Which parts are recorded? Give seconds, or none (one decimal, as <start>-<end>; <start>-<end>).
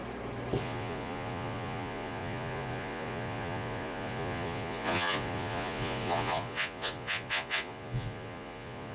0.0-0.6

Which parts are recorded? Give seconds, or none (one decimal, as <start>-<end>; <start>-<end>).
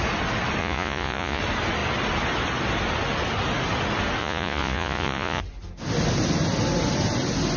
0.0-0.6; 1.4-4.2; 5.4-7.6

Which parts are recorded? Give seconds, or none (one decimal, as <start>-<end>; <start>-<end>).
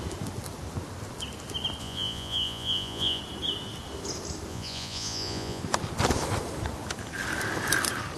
0.0-1.8; 3.2-4.5; 5.6-8.2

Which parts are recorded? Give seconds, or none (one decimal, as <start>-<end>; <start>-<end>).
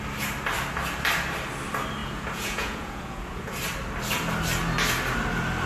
0.0-2.0; 3.5-5.7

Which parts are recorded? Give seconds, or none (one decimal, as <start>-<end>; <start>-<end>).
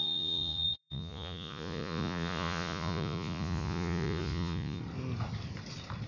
4.8-6.1